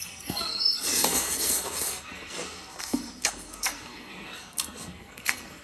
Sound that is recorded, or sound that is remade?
remade